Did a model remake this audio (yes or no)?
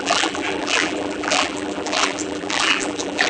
yes